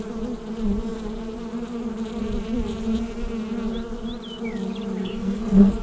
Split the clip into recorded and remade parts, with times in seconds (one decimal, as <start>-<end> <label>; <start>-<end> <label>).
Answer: 0.0-5.0 recorded; 5.0-5.8 remade